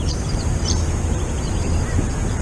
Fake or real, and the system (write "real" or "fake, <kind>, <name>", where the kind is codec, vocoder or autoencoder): fake, vocoder, BigVGAN v2